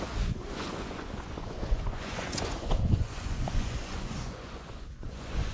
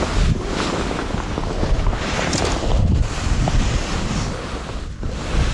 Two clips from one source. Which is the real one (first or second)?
second